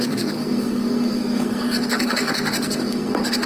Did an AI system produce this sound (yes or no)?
yes